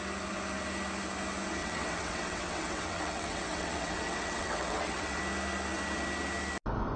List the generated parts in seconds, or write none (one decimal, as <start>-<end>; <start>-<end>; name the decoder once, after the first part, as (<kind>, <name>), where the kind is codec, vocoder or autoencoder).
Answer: 1.6-5.2 (vocoder, WaveNeXt)

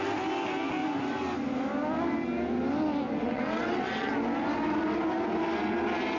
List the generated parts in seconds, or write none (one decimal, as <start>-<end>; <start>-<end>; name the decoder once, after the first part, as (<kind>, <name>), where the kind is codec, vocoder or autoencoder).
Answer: 3.2-4.1 (vocoder, WaveNeXt)

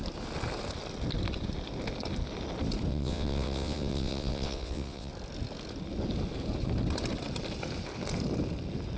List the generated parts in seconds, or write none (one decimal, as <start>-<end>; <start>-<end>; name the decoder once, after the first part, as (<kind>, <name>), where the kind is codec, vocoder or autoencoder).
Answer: 2.9-5.1 (vocoder, WaveNeXt)

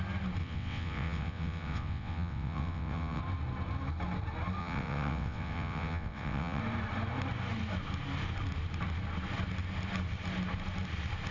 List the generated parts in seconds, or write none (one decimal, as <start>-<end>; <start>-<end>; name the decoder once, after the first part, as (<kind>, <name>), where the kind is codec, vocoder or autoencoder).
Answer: 0.4-3.2 (vocoder, WaveNeXt); 4.6-6.6

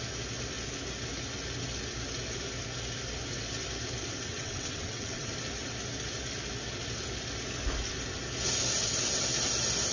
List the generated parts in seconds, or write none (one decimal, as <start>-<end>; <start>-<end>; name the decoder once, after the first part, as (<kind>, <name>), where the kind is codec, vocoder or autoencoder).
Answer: 4.1-5.3 (vocoder, WaveNeXt)

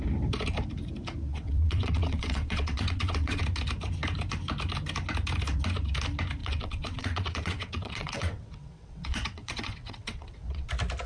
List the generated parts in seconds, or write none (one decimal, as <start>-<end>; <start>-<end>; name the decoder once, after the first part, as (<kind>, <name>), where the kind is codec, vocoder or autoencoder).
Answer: 1.3-3.4 (vocoder, WaveNeXt); 6.4-10.7

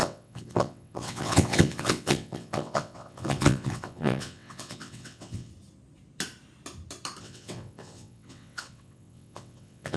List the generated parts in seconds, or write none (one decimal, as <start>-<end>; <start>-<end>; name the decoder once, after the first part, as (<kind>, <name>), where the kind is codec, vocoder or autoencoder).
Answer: 0.0-5.5 (vocoder, WaveNeXt); 7.2-10.0

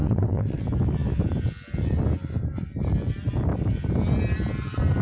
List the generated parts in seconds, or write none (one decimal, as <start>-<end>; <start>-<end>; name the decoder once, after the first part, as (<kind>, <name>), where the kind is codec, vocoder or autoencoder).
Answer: 0.0-0.6 (vocoder, WaveNeXt)